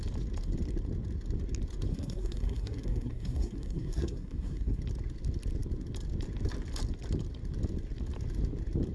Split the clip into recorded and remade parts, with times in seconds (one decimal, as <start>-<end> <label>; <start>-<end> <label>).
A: 0.0-1.9 recorded; 1.9-4.8 remade; 4.8-8.9 recorded